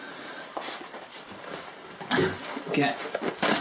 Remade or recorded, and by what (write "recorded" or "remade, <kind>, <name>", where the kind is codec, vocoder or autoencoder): recorded